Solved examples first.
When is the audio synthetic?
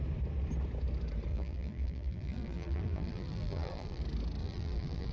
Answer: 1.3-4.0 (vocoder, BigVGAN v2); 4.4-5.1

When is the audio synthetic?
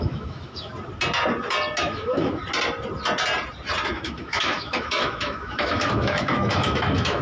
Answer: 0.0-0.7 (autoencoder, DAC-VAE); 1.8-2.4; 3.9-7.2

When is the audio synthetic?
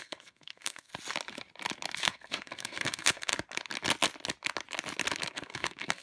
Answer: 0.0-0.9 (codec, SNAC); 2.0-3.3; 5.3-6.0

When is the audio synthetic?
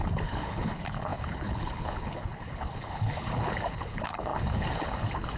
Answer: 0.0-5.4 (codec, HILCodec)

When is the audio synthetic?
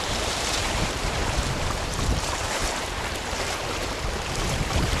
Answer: 0.0-5.0 (vocoder, BigVGAN v2)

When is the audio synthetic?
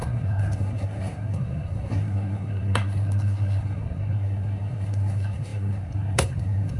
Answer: 0.0-6.8 (codec, SNAC)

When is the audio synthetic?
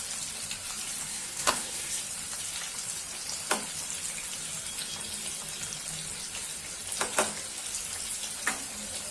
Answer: 1.1-2.0 (codec, SNAC)